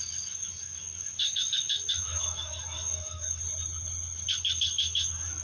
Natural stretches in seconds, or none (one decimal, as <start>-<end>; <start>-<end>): 3.4-4.3